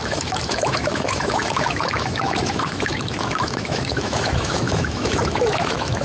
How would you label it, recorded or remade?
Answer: remade